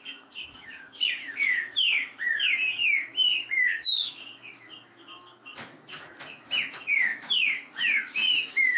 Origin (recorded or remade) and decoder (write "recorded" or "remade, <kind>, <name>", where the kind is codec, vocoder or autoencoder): remade, autoencoder, DAC-VAE